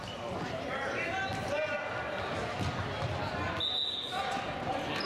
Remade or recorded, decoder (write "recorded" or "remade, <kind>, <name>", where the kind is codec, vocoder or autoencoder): recorded